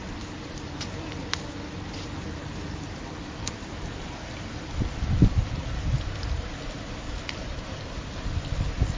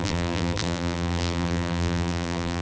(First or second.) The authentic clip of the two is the first